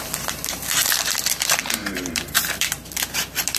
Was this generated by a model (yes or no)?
yes